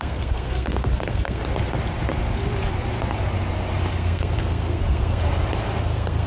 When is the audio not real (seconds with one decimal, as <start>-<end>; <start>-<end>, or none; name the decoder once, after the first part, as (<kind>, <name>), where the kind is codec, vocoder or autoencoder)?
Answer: 0.0-1.4 (codec, SNAC); 3.9-5.2; 5.8-6.3

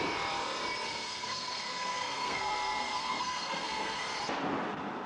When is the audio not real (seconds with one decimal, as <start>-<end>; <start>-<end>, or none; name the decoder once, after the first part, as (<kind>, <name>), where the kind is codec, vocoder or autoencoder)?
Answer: 0.9-4.0 (codec, SNAC)

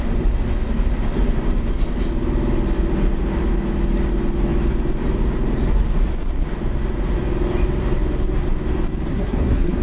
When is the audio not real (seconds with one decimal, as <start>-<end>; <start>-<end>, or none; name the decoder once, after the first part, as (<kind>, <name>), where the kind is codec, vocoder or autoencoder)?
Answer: 9.1-9.8 (codec, SNAC)

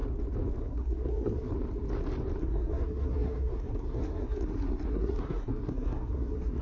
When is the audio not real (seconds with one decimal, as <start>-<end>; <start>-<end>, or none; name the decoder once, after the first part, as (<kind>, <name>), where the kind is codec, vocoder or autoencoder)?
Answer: 0.6-1.5 (codec, SNAC); 2.4-6.6

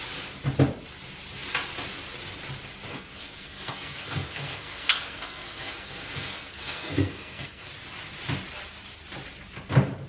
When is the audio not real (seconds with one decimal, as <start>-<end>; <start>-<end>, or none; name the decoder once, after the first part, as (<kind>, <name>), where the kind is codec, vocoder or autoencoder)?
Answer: 2.9-7.7 (codec, SNAC)

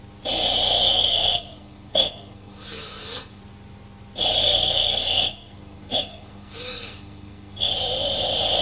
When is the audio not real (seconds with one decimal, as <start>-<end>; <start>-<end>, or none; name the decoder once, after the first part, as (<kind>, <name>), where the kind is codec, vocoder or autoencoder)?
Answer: 0.9-3.4 (codec, SNAC); 4.4-7.7